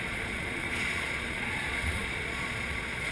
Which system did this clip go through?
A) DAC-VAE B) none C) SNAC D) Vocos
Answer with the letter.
D